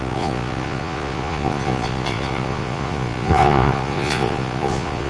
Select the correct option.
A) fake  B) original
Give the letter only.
A